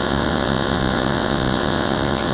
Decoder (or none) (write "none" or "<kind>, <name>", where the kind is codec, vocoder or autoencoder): vocoder, WaveNeXt